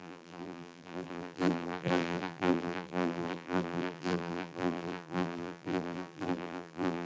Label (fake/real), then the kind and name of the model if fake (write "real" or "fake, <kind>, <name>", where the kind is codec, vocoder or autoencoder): fake, vocoder, BigVGAN v2